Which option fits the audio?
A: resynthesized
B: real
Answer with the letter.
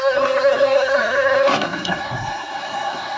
A